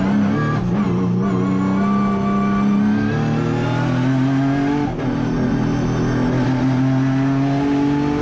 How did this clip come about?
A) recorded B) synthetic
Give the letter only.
A